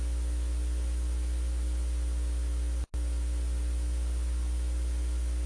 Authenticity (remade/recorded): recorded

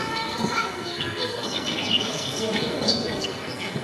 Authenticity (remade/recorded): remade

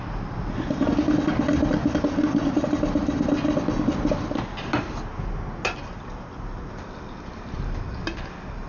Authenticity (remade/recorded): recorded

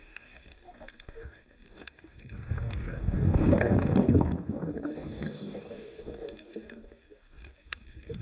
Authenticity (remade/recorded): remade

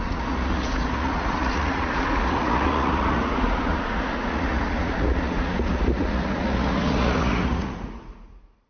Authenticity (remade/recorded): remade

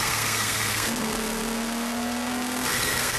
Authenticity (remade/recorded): remade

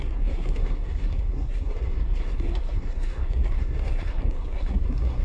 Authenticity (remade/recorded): remade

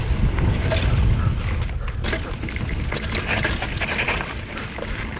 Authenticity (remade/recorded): recorded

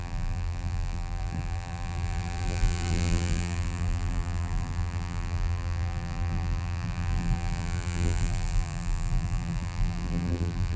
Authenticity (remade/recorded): remade